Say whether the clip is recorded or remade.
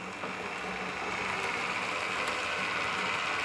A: recorded